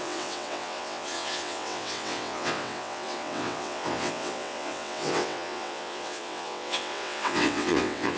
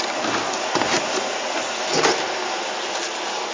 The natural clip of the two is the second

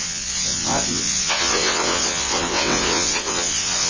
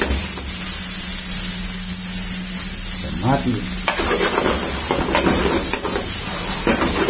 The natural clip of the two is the second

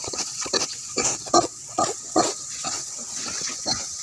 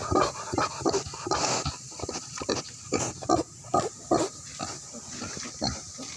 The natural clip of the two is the second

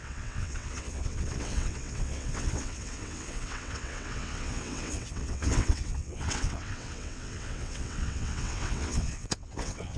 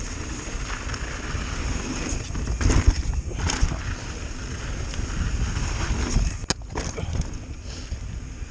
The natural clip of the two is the second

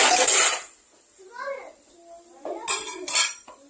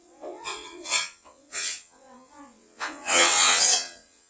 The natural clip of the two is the first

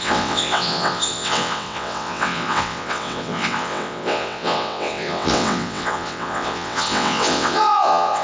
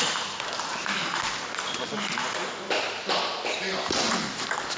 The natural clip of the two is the second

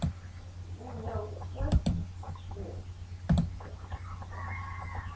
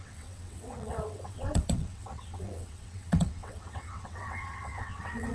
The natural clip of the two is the first